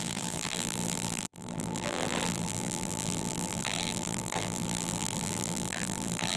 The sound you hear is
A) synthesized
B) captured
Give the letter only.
A